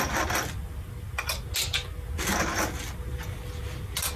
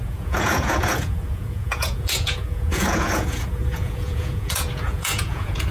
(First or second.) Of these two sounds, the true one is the first